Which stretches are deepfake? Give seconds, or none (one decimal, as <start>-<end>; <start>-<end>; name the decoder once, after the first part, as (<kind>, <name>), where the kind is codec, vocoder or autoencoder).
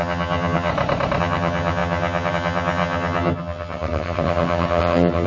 0.0-0.7 (vocoder, HiFi-GAN); 1.2-5.3